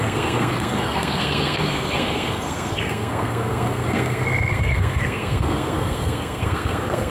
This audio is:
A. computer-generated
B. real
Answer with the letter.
A